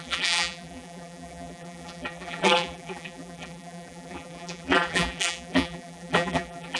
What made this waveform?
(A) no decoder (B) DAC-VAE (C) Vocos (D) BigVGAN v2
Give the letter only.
D